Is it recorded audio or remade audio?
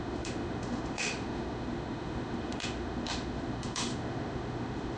remade